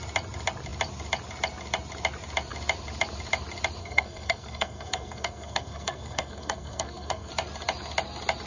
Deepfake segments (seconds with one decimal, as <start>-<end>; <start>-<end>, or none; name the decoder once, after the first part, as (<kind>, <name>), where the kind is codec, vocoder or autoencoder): 3.8-7.3 (codec, SNAC)